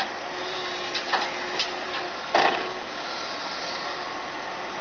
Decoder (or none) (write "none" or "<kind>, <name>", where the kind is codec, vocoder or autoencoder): none